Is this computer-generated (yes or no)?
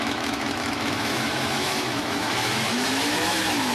yes